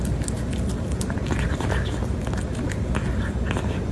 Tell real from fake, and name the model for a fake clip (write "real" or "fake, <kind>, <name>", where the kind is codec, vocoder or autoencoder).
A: real